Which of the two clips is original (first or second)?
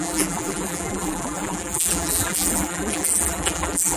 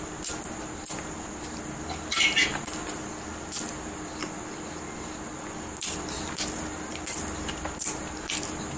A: second